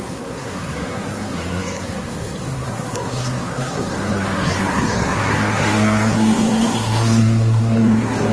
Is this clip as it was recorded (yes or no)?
no